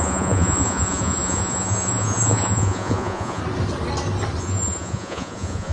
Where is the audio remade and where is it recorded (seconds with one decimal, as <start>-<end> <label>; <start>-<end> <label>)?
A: 0.0-3.4 remade; 3.4-4.4 recorded; 4.4-5.7 remade